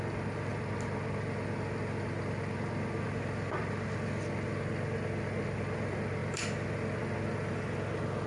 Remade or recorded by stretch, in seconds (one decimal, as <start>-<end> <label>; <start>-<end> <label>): 0.0-8.3 recorded